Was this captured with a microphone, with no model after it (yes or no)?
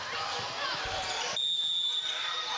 yes